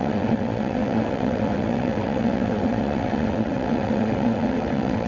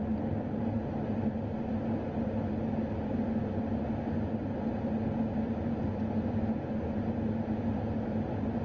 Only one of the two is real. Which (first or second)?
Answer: second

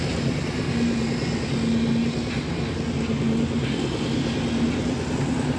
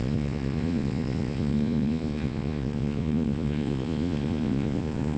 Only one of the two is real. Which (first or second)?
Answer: first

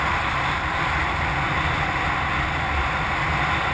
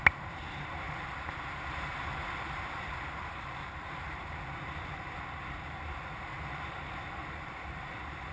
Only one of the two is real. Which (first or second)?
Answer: first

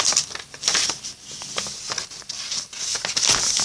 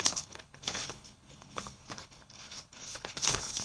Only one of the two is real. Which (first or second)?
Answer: first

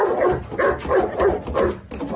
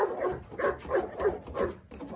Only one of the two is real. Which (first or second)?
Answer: first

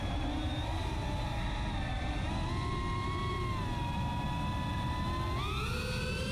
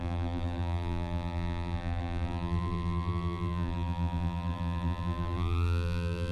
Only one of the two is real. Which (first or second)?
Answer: first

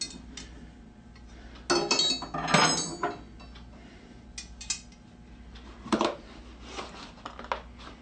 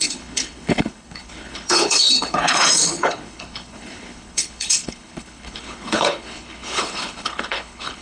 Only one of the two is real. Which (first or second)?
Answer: first